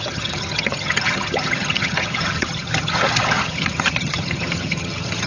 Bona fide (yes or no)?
no